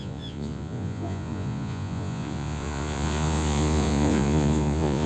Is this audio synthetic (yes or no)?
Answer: yes